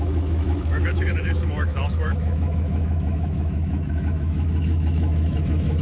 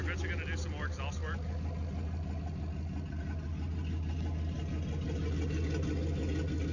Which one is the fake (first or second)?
first